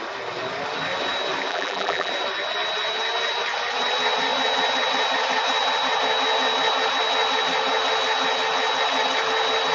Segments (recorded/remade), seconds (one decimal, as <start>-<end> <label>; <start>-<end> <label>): 0.0-1.5 recorded; 1.5-2.1 remade; 2.1-9.7 recorded